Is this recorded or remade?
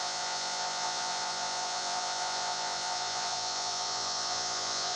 remade